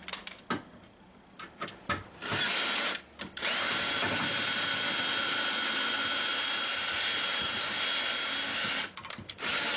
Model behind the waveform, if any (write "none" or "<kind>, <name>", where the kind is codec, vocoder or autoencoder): none